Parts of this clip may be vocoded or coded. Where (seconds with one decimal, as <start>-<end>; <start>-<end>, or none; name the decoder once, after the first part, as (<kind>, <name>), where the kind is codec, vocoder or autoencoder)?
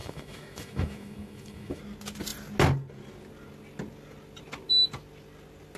0.0-1.8 (autoencoder, DAC-VAE)